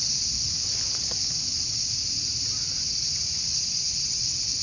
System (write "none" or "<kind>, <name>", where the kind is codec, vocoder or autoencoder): none